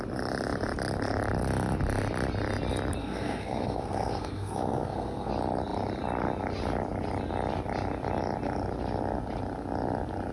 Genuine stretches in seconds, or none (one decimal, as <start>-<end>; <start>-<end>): 0.0-3.0; 5.3-10.3